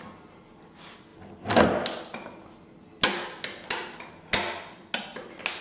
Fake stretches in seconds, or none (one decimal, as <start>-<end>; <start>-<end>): none